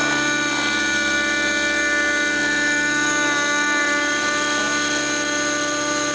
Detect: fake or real real